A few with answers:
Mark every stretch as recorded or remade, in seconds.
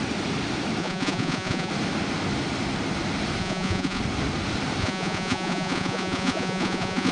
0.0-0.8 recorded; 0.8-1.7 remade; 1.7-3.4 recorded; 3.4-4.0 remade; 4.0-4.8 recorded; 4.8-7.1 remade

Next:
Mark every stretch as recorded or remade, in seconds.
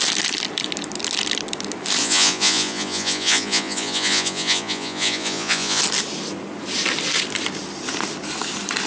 0.0-2.0 recorded; 2.0-5.8 remade; 5.8-8.9 recorded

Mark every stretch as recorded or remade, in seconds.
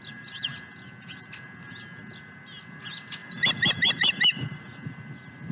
0.0-3.2 recorded; 3.2-4.6 remade; 4.6-5.5 recorded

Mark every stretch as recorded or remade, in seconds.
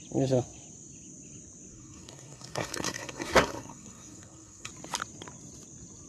0.0-1.7 recorded; 1.7-4.7 remade; 4.7-6.1 recorded